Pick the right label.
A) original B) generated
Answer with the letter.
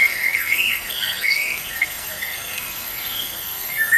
B